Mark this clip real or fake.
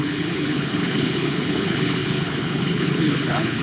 fake